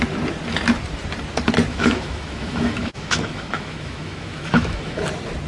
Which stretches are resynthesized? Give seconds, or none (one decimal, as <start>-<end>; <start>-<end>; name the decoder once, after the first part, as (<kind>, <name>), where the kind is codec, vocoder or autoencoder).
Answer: 1.7-5.0 (autoencoder, DAC-VAE)